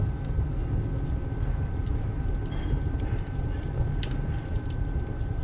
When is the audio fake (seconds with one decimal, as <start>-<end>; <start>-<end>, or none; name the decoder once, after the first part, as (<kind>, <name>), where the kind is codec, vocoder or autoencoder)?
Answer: 1.8-3.8 (vocoder, BigVGAN v2); 4.5-5.4